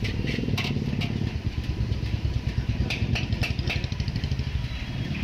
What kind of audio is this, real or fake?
fake